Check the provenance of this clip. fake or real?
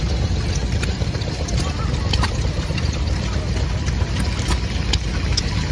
real